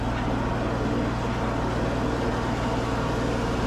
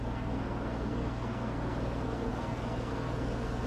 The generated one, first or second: second